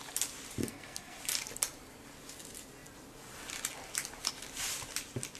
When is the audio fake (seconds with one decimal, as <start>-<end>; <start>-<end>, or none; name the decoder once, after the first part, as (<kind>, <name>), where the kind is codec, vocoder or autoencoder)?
0.6-1.2 (codec, SNAC)